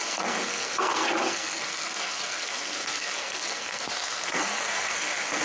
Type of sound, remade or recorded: remade